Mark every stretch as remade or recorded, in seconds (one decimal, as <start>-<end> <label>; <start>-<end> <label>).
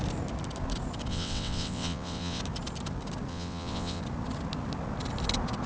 0.0-1.1 recorded; 1.1-2.4 remade; 2.4-3.3 recorded; 3.3-4.0 remade; 4.0-5.7 recorded